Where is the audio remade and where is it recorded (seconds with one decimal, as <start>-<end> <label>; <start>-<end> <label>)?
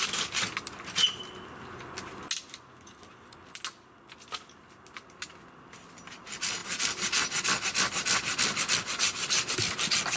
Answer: 0.0-10.2 recorded